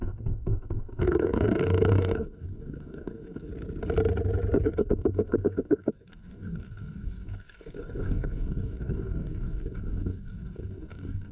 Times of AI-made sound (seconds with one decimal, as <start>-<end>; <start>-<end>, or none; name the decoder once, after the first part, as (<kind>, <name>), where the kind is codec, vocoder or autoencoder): 0.0-3.5 (codec, DAC); 4.6-11.3